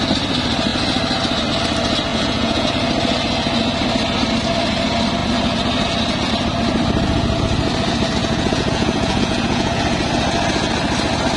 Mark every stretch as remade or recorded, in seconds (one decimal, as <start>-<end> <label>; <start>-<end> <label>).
0.0-2.1 recorded; 2.1-2.7 remade; 2.7-8.2 recorded; 8.2-9.8 remade; 9.8-11.4 recorded